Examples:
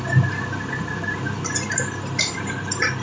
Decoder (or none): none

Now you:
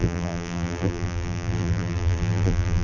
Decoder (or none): vocoder, BigVGAN v2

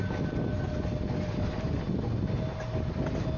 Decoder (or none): none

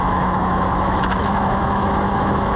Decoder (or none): autoencoder, DAC-VAE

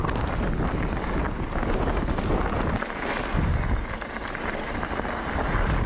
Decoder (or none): none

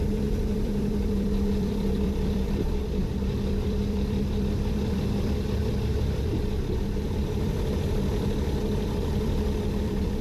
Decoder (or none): vocoder, BigVGAN v2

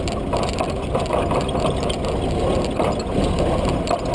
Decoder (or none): none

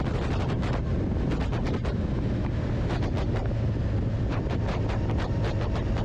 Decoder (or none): none